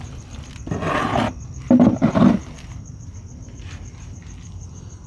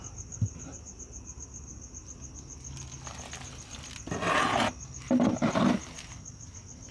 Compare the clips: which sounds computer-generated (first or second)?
first